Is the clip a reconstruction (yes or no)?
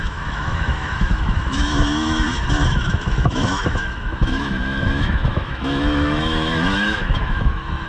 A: yes